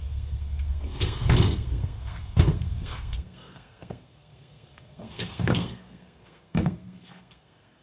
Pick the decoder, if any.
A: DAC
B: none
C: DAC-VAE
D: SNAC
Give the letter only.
D